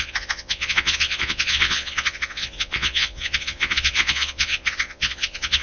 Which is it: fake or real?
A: fake